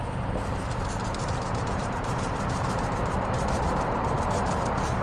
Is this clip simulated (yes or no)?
yes